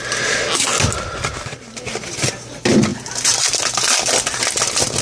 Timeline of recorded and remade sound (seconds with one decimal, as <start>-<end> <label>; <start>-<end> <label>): 0.0-5.0 recorded